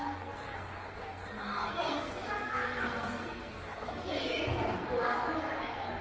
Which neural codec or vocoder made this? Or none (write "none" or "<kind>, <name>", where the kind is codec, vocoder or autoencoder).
codec, SNAC